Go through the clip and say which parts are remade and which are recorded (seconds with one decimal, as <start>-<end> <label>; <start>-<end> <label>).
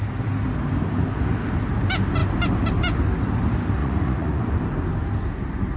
0.0-3.8 recorded; 3.8-4.4 remade; 4.4-5.8 recorded